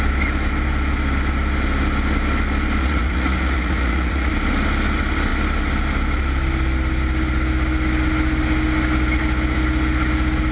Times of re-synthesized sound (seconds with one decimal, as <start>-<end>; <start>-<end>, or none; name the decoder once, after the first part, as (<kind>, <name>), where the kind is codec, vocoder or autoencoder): 2.8-4.3 (vocoder, Vocos)

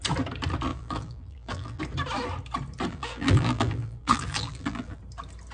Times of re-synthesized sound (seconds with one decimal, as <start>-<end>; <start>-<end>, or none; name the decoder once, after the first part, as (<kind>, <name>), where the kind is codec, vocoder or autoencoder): 0.7-1.8 (vocoder, BigVGAN v2); 2.9-5.0

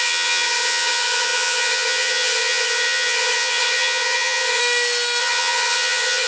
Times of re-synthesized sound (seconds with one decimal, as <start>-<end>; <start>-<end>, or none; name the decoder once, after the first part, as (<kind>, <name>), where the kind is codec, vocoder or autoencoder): 0.0-4.6 (vocoder, HiFi-GAN); 5.2-6.3

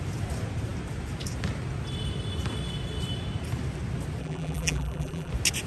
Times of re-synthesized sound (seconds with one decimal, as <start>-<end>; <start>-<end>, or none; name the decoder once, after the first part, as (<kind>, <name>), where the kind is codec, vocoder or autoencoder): 4.2-5.3 (vocoder, BigVGAN v2)

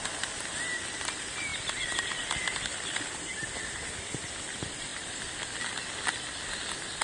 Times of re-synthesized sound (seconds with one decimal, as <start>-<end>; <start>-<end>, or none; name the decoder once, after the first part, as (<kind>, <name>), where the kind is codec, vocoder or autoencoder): 0.0-4.9 (vocoder, BigVGAN v2)

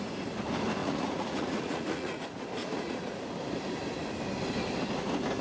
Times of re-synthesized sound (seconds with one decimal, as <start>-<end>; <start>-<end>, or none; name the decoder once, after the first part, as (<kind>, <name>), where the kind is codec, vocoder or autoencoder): 0.8-2.2 (vocoder, Vocos); 2.6-3.2

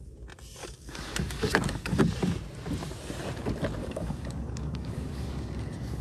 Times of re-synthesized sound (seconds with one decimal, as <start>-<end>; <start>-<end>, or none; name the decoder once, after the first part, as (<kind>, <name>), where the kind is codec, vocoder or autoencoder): 0.6-2.0 (codec, DAC); 3.8-6.0

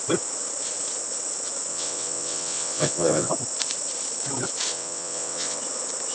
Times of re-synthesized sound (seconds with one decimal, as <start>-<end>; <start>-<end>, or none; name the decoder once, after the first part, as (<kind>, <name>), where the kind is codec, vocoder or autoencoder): 1.7-3.3 (vocoder, WaveNeXt); 4.7-5.6